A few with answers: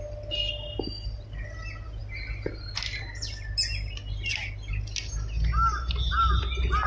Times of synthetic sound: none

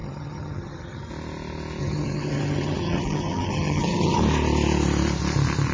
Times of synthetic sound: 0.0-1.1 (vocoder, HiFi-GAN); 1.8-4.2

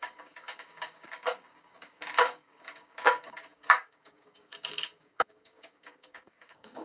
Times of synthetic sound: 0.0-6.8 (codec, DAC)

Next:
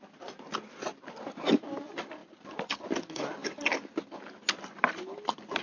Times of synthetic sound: 2.2-3.0 (vocoder, BigVGAN v2)